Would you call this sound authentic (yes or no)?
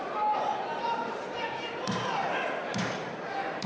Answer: no